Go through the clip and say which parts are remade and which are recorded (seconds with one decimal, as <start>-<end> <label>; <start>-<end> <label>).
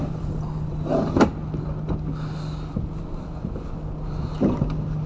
0.0-1.3 remade; 1.3-4.4 recorded; 4.4-5.1 remade